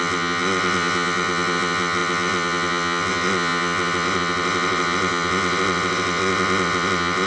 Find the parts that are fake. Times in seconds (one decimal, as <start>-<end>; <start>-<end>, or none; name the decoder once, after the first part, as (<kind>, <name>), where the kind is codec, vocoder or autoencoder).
0.0-7.3 (vocoder, WaveNeXt)